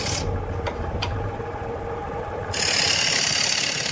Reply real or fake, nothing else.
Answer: real